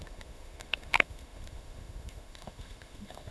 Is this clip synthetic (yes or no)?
yes